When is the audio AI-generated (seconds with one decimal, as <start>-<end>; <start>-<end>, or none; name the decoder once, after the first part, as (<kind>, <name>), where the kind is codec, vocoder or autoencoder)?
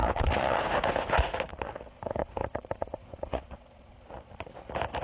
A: 0.0-0.6 (vocoder, Vocos); 1.5-4.5